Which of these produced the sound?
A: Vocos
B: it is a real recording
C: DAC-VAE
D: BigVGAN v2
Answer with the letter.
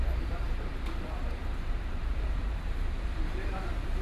D